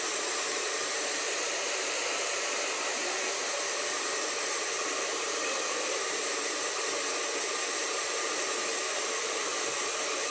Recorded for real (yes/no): no